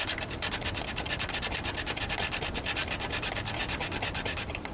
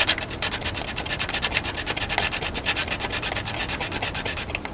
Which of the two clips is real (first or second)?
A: second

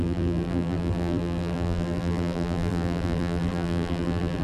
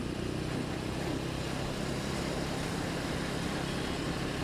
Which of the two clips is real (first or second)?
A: second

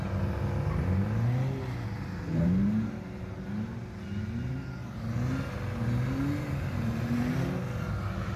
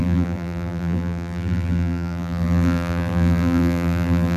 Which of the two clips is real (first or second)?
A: first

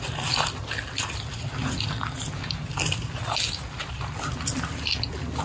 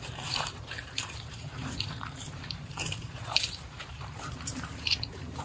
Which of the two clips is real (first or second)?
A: first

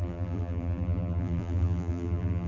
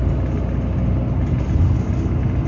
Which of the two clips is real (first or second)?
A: second